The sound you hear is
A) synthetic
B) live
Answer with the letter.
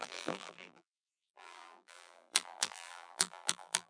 A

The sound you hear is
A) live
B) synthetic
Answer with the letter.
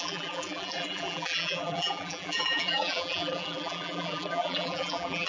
B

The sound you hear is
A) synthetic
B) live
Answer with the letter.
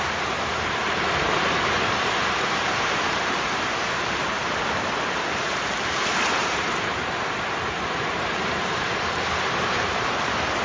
A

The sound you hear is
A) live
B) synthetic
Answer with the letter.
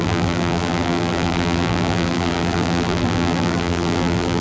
B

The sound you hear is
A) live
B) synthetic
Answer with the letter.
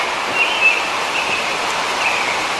B